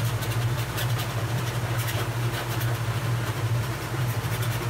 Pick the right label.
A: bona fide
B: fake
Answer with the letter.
B